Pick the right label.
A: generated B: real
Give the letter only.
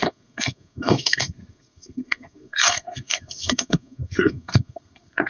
A